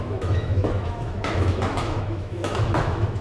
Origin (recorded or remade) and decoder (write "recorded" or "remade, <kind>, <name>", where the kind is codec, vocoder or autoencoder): remade, autoencoder, DAC-VAE